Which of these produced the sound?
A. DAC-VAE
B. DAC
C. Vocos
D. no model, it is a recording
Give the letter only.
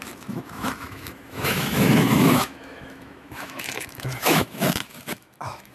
A